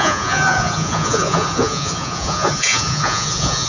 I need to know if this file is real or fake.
fake